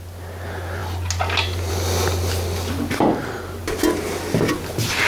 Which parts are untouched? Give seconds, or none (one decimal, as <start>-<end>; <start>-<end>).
0.0-5.1